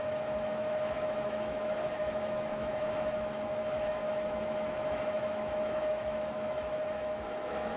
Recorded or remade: remade